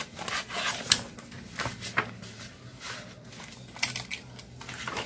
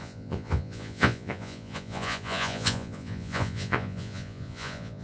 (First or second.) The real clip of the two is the first